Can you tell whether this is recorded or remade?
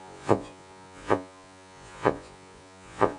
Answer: remade